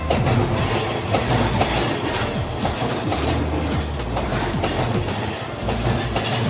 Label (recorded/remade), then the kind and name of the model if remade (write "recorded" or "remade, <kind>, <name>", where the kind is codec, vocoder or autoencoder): recorded